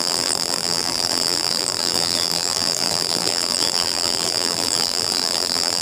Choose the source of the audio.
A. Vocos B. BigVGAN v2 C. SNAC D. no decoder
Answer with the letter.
B